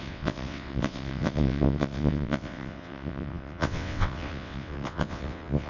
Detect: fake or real fake